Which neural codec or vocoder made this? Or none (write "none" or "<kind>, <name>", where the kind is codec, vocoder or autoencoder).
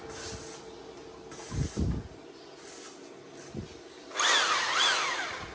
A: none